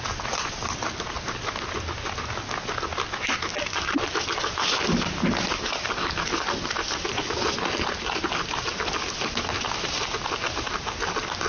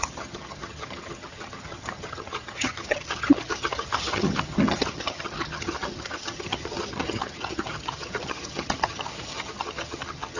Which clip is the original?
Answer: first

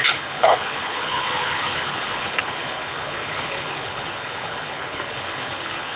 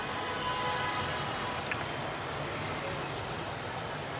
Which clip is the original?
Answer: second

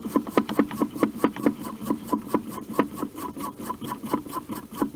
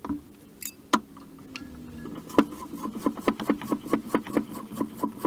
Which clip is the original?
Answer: second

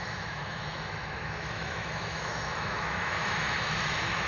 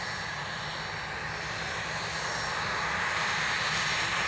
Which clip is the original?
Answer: second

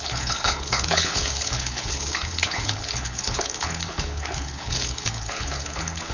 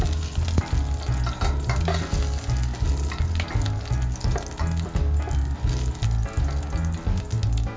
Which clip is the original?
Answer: second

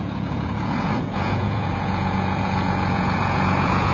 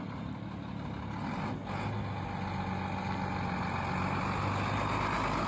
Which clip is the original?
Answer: second